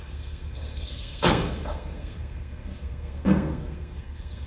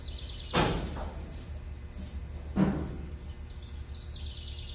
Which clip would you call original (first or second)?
second